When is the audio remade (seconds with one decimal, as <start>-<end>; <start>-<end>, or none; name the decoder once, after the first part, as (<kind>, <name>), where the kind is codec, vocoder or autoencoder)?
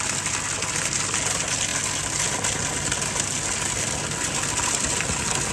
none